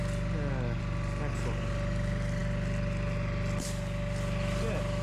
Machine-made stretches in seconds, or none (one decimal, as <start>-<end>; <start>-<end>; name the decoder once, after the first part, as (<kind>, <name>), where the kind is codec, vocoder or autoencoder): none